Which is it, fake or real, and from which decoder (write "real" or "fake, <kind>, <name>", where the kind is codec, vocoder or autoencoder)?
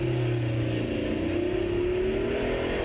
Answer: real